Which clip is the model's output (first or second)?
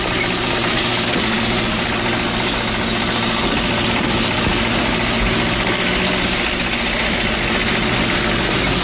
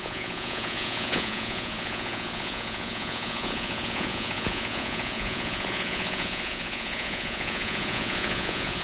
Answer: second